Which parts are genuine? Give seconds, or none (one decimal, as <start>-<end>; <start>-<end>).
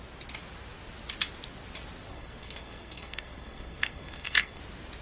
0.0-2.1; 4.6-5.0